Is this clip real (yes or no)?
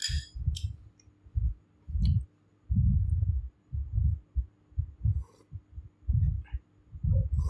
yes